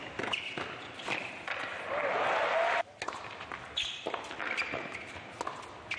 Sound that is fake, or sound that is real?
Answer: real